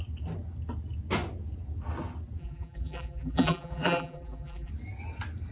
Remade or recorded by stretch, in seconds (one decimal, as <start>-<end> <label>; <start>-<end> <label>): 0.0-2.4 recorded; 2.4-4.7 remade; 4.7-5.5 recorded